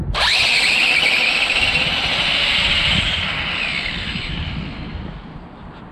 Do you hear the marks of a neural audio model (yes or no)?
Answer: no